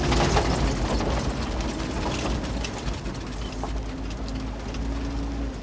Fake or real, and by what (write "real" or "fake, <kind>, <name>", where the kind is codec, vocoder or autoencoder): real